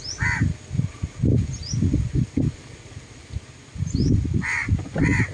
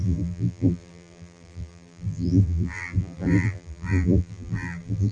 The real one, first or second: first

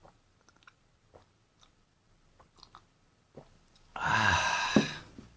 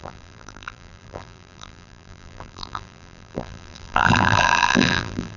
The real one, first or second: first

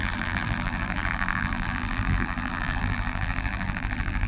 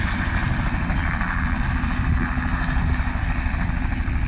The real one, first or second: second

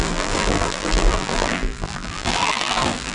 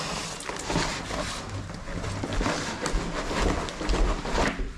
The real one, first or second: second